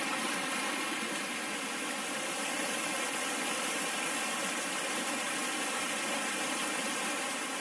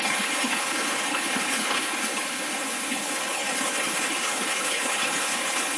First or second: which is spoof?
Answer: second